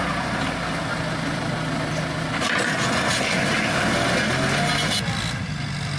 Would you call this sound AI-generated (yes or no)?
no